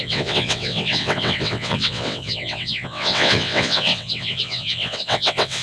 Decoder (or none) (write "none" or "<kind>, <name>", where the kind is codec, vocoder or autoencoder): vocoder, WaveNeXt